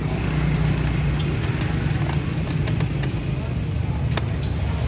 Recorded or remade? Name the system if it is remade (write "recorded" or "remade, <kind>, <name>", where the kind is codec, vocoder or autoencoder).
recorded